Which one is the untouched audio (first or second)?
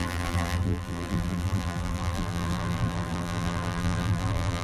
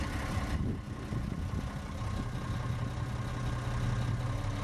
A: second